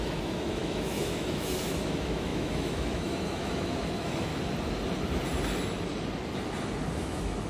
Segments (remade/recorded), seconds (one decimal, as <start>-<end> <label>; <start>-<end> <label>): 0.0-4.3 remade; 4.3-7.0 recorded; 7.0-7.5 remade